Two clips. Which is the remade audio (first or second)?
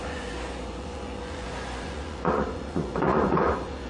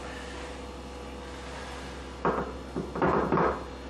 first